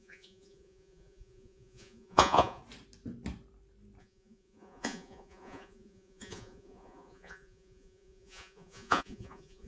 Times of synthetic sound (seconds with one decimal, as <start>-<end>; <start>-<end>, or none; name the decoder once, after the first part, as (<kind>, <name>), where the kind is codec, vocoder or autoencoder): 0.0-2.6 (vocoder, Vocos); 4.0-9.7

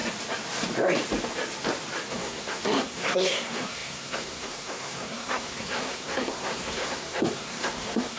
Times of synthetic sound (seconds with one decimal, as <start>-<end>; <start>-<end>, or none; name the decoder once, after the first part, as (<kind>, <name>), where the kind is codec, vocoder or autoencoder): 2.1-8.2 (codec, SNAC)

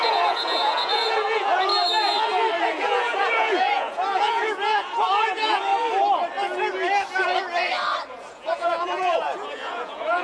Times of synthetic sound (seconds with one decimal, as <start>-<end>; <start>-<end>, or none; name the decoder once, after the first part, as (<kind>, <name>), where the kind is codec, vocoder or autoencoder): 0.0-1.7 (vocoder, Vocos); 2.6-5.7; 8.3-10.2

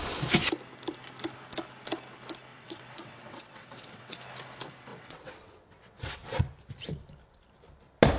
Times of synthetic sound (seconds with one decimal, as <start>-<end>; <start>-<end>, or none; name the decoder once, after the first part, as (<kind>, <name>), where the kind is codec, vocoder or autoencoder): 2.5-4.2 (vocoder, WaveNeXt); 4.9-6.4

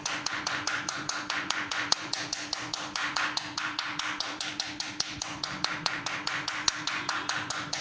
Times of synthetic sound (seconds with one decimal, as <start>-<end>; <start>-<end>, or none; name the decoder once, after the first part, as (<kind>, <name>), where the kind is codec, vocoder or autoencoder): 0.0-7.8 (vocoder, Vocos)

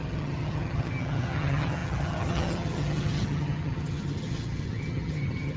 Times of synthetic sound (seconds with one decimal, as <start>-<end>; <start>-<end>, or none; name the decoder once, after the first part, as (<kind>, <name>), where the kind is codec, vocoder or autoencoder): 0.0-5.6 (vocoder, HiFi-GAN)

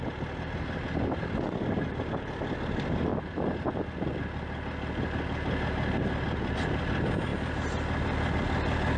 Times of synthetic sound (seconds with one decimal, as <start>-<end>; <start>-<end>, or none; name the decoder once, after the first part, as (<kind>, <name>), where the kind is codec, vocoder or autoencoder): none

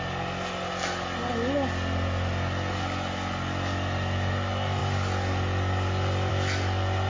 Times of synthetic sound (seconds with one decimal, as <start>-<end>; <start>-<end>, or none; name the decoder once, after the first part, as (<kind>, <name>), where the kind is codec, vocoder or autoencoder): none